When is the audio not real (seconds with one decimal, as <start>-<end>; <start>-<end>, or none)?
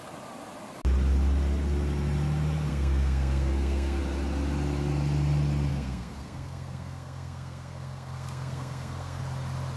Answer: 2.7-4.0; 5.7-9.2